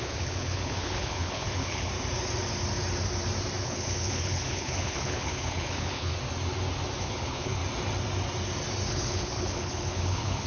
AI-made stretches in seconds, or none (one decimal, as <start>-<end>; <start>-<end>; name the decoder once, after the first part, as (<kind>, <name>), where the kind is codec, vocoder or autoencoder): 0.0-1.9 (codec, HILCodec); 3.6-6.1; 7.0-7.6; 8.9-10.5